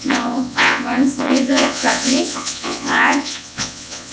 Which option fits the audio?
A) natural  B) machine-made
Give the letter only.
B